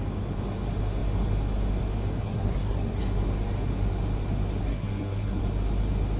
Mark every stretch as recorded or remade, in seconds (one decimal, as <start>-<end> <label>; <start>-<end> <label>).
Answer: 0.0-2.2 recorded; 2.2-3.0 remade; 3.0-4.6 recorded; 4.6-5.4 remade; 5.4-6.2 recorded